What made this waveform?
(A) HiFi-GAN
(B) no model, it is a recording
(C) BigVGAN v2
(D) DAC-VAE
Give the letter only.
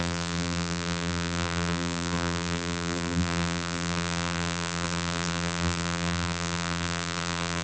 C